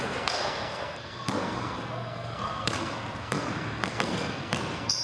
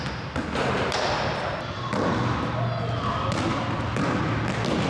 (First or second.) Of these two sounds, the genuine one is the second